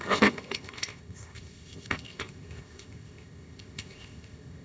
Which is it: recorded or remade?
remade